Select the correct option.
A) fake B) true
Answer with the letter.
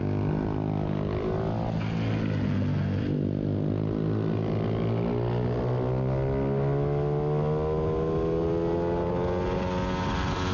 B